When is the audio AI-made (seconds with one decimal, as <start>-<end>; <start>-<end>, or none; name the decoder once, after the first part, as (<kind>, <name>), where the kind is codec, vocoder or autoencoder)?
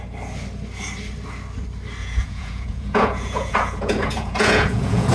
2.0-5.1 (vocoder, Vocos)